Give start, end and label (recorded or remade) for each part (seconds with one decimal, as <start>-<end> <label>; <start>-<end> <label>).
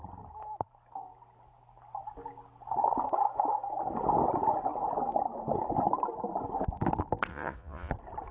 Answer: 0.0-7.3 recorded; 7.3-7.9 remade; 7.9-8.3 recorded